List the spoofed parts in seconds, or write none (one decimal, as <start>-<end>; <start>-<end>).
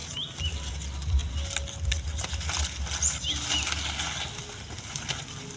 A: none